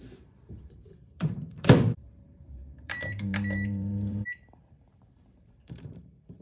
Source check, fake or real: fake